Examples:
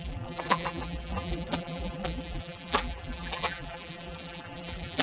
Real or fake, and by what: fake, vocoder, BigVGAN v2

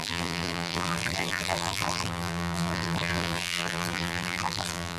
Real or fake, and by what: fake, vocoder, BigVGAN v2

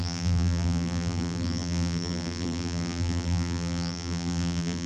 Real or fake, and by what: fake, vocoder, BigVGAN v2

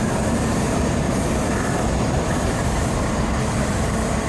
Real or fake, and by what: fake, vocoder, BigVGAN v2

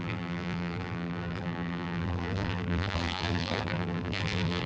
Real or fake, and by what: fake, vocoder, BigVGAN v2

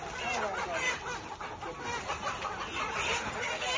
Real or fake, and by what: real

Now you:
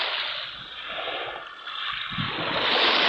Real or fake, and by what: real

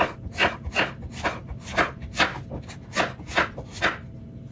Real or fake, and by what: real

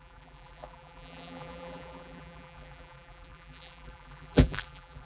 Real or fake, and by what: fake, vocoder, BigVGAN v2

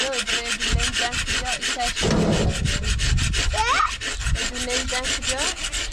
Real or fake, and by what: real